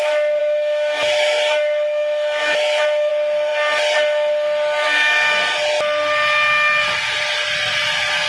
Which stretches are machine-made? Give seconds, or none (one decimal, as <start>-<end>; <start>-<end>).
0.4-3.1